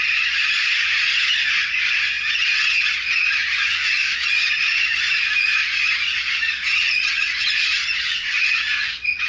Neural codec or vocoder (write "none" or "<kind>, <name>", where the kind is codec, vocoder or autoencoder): vocoder, Vocos